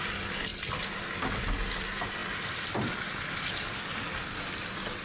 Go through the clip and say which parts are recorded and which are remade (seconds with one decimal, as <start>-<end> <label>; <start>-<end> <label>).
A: 0.0-2.2 recorded; 2.2-3.9 remade; 3.9-5.0 recorded